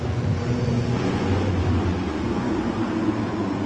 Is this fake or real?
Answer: fake